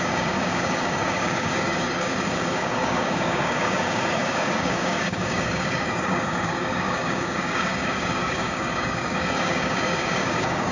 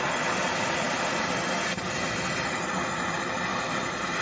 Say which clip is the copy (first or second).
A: first